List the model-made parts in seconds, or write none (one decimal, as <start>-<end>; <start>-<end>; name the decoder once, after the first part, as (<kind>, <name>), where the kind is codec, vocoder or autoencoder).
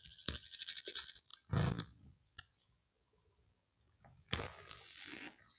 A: 0.0-5.6 (vocoder, BigVGAN v2)